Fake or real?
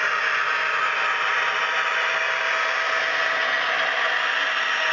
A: real